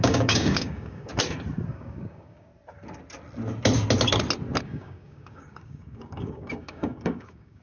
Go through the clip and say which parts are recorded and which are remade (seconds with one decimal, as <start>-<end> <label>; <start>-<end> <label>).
0.0-1.1 remade; 1.1-1.7 recorded; 1.7-2.5 remade; 2.5-4.6 recorded; 4.6-7.6 remade